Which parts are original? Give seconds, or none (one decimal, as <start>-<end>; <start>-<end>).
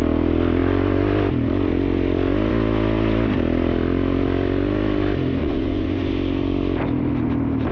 0.0-5.4; 6.1-7.7